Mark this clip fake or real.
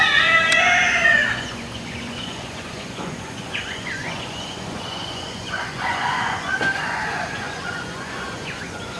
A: fake